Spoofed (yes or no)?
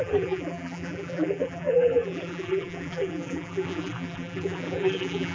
yes